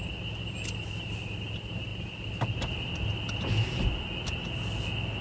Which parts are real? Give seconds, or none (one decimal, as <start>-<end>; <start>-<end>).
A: 0.0-5.2